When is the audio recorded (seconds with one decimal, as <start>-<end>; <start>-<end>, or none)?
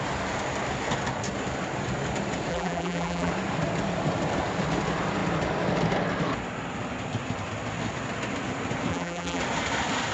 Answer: 0.0-2.5; 3.3-8.9; 9.4-10.1